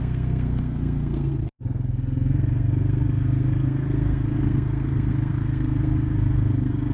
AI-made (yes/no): yes